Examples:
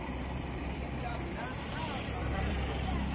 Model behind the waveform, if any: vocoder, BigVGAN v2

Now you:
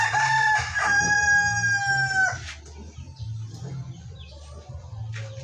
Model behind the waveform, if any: none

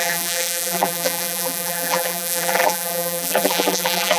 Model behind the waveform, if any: vocoder, BigVGAN v2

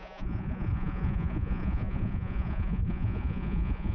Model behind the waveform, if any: vocoder, Vocos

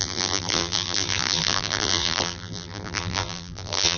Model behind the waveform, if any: vocoder, BigVGAN v2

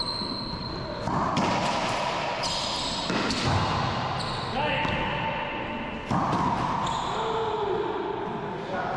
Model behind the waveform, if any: none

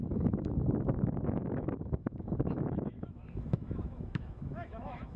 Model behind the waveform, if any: autoencoder, DAC-VAE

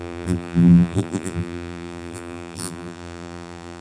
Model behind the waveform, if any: vocoder, BigVGAN v2